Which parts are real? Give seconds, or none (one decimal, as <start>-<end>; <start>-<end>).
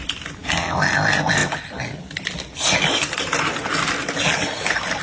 0.0-5.0